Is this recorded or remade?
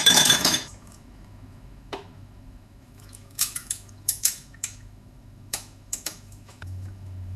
remade